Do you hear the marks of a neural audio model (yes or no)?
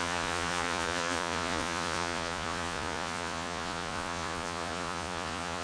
yes